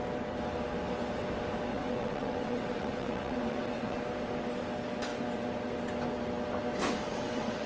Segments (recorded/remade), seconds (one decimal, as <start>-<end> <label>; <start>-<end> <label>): 0.0-1.7 recorded; 1.7-4.0 remade; 4.0-7.1 recorded; 7.1-7.7 remade